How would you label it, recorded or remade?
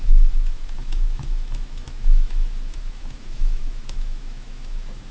remade